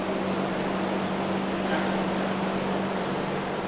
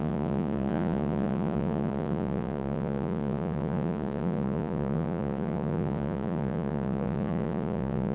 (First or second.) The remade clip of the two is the second